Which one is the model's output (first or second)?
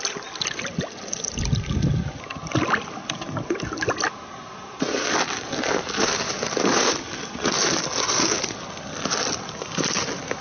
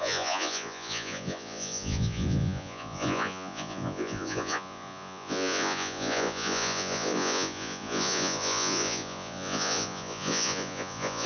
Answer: second